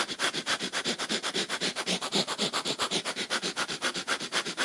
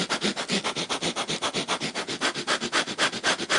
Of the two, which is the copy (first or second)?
first